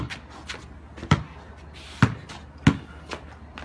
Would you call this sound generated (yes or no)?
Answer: no